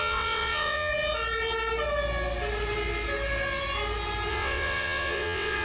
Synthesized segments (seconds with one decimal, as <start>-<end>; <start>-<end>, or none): 0.0-0.9; 4.3-5.6